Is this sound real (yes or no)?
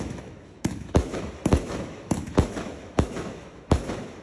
no